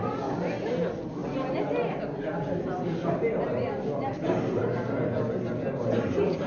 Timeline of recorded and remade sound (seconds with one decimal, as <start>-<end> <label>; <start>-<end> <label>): 0.0-6.5 recorded